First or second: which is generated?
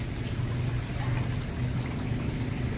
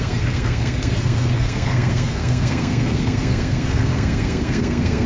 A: second